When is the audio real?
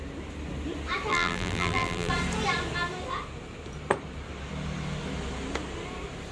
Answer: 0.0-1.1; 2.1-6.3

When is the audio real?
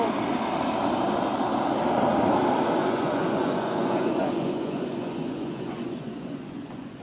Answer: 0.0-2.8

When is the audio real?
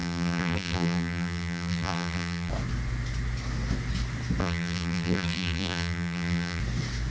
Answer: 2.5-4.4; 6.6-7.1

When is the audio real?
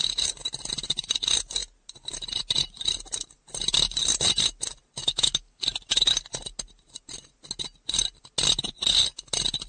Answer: 0.0-5.0; 5.6-9.7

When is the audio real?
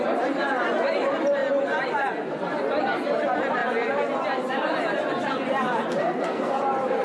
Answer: 0.0-6.0; 6.6-7.0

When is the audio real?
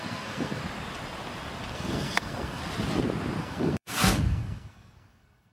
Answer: 0.6-1.7; 2.6-3.4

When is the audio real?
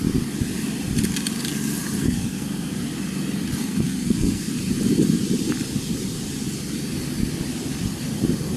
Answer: 0.0-2.0; 2.8-3.6; 4.5-8.6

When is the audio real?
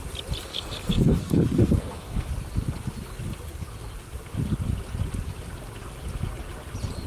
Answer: 0.0-0.5; 2.3-7.1